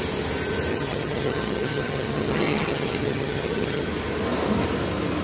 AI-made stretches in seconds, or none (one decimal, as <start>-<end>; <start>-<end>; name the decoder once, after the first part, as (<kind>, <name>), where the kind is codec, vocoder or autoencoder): 0.7-3.8 (vocoder, HiFi-GAN)